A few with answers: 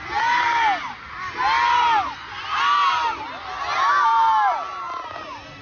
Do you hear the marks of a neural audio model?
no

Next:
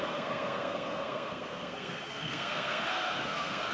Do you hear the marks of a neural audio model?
yes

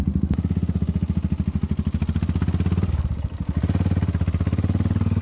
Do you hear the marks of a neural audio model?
no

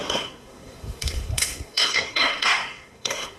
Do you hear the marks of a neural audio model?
yes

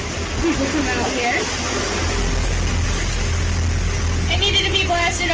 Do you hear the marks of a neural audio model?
no